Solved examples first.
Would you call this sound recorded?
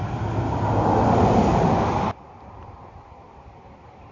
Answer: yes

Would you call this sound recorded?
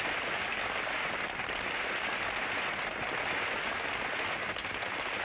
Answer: yes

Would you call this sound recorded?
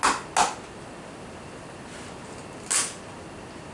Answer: yes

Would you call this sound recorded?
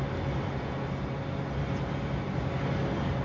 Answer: yes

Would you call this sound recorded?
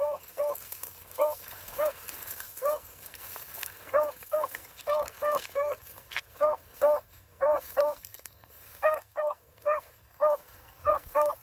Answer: no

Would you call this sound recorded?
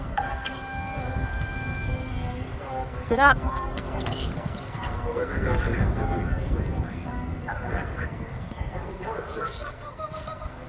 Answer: no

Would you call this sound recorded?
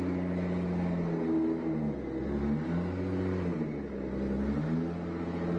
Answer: yes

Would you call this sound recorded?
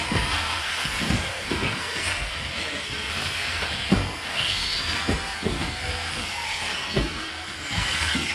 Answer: no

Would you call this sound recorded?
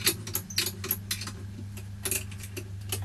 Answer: yes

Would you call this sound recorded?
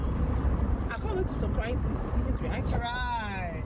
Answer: yes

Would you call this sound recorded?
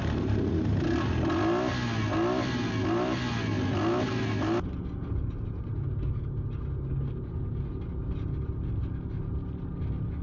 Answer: yes